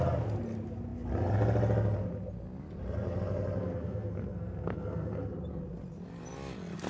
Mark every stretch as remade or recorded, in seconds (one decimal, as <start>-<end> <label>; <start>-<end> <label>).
0.0-3.6 recorded; 3.6-5.2 remade; 5.2-6.9 recorded